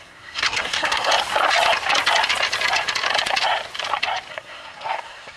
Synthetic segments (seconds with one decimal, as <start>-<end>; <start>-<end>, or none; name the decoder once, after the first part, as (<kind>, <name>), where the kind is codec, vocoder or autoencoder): 0.0-1.1 (codec, SNAC); 4.3-5.4